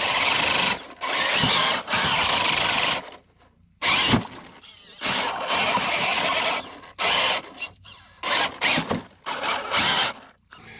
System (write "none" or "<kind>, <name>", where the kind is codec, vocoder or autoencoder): none